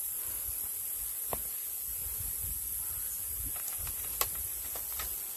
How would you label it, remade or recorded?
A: recorded